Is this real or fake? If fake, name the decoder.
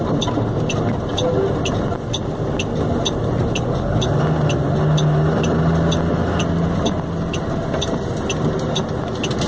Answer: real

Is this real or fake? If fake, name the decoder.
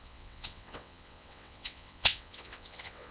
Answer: fake, vocoder, WaveNeXt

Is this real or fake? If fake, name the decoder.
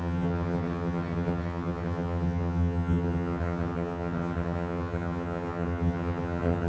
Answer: fake, vocoder, HiFi-GAN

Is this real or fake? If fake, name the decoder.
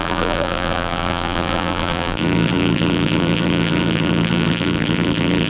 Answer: fake, vocoder, BigVGAN v2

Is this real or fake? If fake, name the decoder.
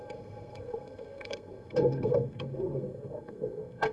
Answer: fake, codec, SNAC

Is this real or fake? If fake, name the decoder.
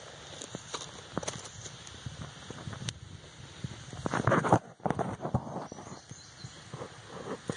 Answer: real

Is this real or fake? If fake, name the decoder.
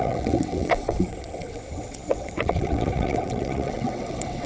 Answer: fake, vocoder, WaveNeXt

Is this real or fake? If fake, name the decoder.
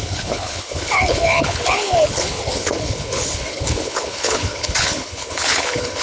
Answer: fake, codec, HILCodec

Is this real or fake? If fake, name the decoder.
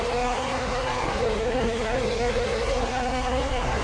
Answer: fake, codec, SNAC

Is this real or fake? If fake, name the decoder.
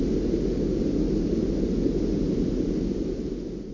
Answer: real